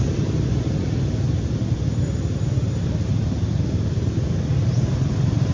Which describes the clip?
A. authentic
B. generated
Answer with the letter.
A